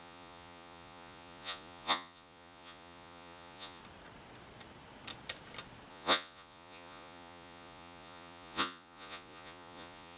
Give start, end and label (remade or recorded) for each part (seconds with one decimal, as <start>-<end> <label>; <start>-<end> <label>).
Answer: 0.0-3.8 remade; 3.8-5.9 recorded; 5.9-10.2 remade